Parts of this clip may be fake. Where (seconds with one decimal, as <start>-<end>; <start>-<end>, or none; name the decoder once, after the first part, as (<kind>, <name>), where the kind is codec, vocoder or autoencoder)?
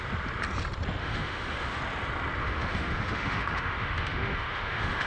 1.0-1.8 (autoencoder, DAC-VAE); 2.4-5.1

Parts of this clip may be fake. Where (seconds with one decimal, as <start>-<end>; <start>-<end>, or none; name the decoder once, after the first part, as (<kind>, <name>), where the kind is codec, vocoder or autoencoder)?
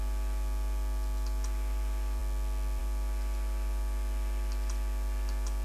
none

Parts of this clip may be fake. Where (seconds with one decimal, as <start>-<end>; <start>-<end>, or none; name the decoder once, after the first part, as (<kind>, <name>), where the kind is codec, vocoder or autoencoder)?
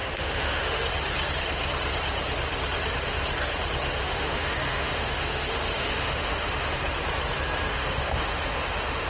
0.0-0.8 (autoencoder, DAC-VAE); 4.0-6.7; 7.7-9.1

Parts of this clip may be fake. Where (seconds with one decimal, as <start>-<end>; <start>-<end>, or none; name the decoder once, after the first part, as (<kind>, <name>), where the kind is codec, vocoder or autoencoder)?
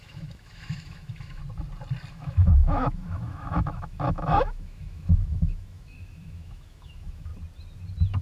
0.0-1.4 (autoencoder, DAC-VAE); 2.1-7.3